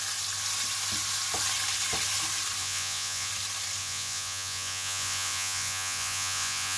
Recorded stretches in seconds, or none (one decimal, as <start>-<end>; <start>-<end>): 0.0-2.6; 3.3-3.8